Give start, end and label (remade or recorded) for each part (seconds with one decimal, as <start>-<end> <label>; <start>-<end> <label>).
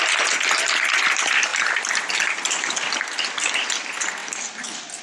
0.0-5.0 recorded